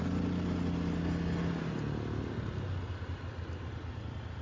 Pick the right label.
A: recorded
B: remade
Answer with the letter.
A